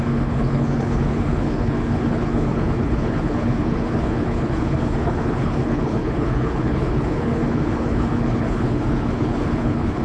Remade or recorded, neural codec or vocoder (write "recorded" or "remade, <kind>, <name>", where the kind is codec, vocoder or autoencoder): remade, codec, HILCodec